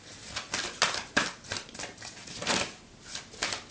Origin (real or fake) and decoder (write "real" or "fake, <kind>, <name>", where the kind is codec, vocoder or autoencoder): real